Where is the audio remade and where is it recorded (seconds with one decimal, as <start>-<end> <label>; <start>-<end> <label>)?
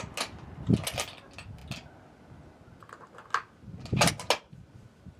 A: 0.0-5.2 recorded